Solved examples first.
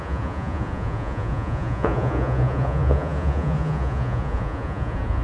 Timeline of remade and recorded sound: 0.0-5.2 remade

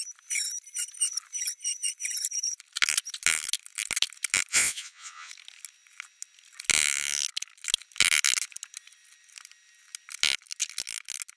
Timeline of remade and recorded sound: 0.0-4.5 recorded; 4.5-5.3 remade; 5.3-11.4 recorded

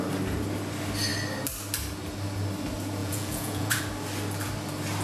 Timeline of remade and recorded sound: 0.0-3.0 recorded; 3.0-3.8 remade; 3.8-5.0 recorded